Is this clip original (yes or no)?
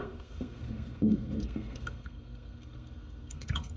no